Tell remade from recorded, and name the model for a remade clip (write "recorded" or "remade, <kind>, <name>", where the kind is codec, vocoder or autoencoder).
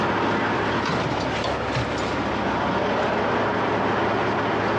recorded